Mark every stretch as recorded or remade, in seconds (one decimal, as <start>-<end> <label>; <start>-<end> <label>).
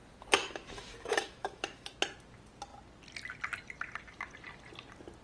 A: 0.0-0.4 recorded; 0.4-1.9 remade; 1.9-5.2 recorded